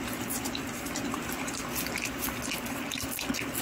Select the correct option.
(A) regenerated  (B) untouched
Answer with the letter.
B